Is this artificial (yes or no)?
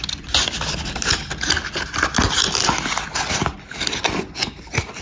no